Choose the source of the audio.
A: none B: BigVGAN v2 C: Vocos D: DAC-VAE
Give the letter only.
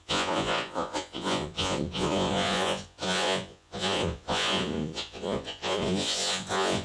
C